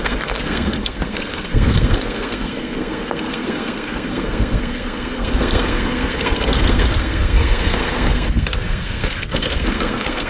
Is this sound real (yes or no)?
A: no